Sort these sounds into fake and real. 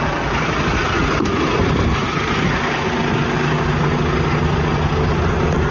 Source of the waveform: real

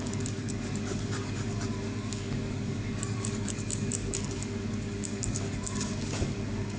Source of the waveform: fake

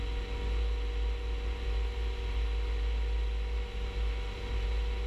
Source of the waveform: real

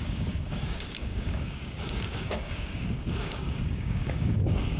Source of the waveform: fake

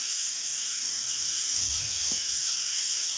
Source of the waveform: fake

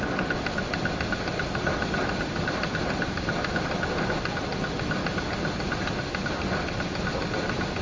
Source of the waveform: real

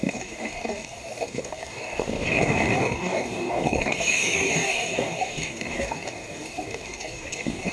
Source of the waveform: fake